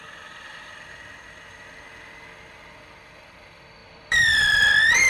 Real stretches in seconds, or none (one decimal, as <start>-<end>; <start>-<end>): 0.0-3.8; 4.6-5.1